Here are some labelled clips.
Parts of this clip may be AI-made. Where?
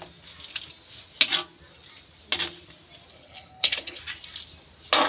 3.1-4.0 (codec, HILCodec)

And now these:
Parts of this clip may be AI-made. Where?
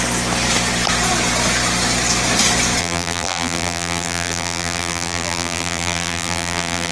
2.8-6.9 (vocoder, BigVGAN v2)